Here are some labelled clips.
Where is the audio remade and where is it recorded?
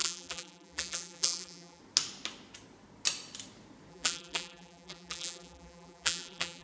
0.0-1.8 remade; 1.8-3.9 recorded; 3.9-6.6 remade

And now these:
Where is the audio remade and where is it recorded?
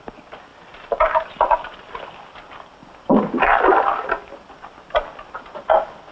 0.0-2.8 recorded; 2.8-3.4 remade; 3.4-6.1 recorded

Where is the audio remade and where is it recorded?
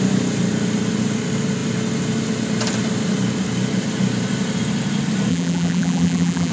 0.0-5.3 recorded; 5.3-6.5 remade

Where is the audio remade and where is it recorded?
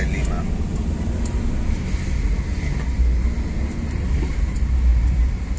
0.0-4.9 recorded; 4.9-5.6 remade